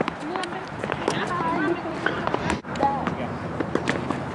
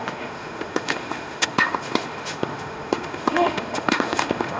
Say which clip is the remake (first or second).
second